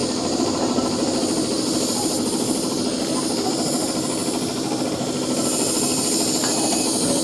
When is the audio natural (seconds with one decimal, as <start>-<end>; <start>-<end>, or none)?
0.0-7.2